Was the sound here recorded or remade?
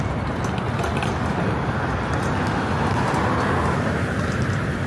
recorded